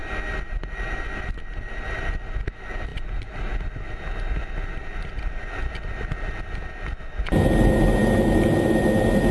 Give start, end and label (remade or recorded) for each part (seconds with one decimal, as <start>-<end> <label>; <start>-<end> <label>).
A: 0.0-9.3 recorded